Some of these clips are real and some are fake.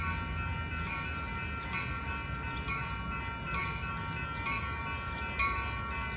real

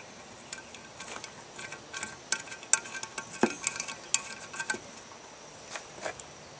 real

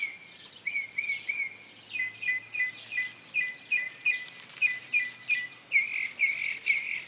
real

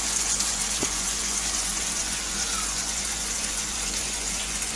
fake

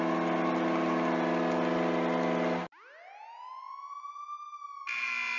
real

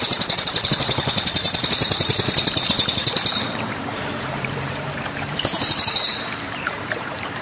fake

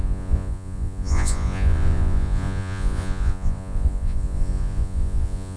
fake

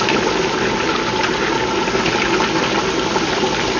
real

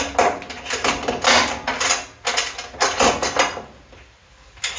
real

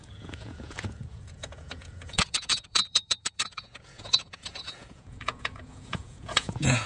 fake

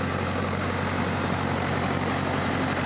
real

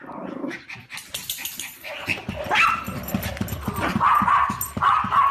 real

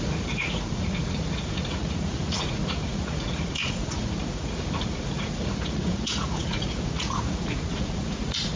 fake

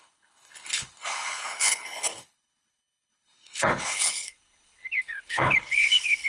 fake